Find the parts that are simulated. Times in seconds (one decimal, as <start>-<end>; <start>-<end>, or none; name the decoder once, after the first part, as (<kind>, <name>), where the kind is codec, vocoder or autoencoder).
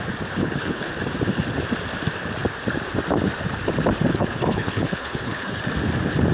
0.4-0.9 (codec, HILCodec); 4.1-5.6